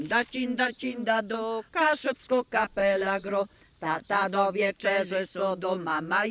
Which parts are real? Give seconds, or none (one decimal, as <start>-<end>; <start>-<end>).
0.0-2.8; 3.6-6.3